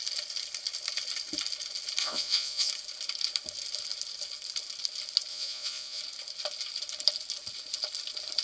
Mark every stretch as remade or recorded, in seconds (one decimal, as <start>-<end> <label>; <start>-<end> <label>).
0.0-2.0 recorded; 2.0-2.7 remade; 2.7-5.3 recorded; 5.3-6.0 remade; 6.0-8.4 recorded